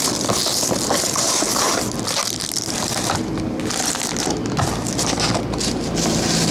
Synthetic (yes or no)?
no